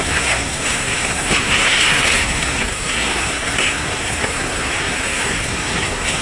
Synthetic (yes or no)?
yes